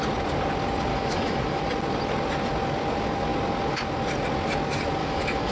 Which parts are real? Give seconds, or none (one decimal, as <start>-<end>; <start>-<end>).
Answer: 0.0-0.9; 1.6-5.0